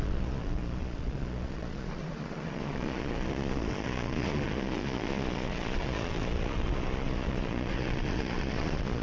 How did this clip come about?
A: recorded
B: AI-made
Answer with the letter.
B